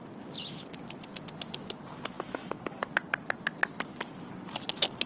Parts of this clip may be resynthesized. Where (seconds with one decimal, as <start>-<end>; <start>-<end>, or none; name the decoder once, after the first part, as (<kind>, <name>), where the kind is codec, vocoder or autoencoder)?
2.4-2.9 (vocoder, WaveNeXt)